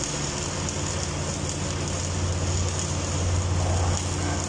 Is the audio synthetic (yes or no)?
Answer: no